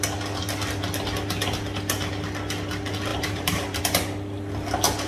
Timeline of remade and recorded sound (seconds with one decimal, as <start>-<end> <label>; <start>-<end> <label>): 0.0-3.1 recorded; 3.1-3.8 remade; 3.8-5.1 recorded